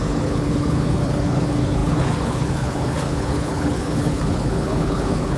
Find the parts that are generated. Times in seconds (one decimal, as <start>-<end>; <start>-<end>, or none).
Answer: 0.0-5.4